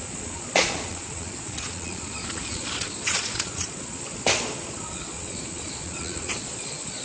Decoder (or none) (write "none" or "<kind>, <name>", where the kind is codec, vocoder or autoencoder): vocoder, Vocos